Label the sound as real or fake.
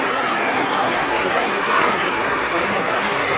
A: fake